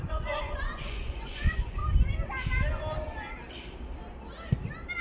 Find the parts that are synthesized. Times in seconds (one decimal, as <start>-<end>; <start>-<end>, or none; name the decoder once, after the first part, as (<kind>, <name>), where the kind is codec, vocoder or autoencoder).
0.0-1.8 (vocoder, Vocos)